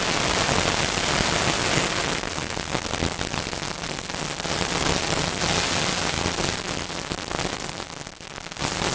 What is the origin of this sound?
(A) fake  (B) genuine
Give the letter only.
B